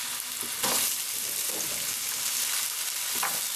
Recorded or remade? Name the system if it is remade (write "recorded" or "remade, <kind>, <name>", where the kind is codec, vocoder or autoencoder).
recorded